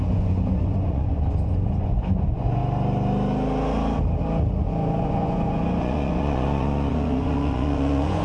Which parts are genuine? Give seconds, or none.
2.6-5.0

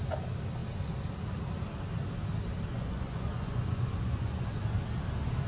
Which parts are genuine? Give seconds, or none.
0.0-2.7; 4.6-5.5

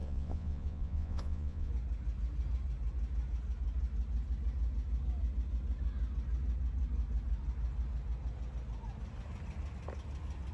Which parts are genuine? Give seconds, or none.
1.7-10.5

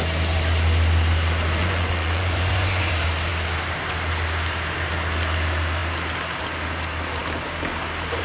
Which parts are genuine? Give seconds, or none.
0.0-1.6; 2.9-8.2

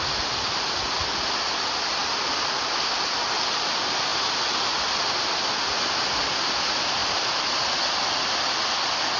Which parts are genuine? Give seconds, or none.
0.0-9.2

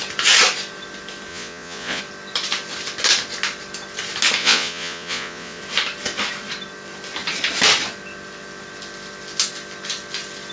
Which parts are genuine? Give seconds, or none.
0.0-1.3; 2.0-4.4; 5.6-10.5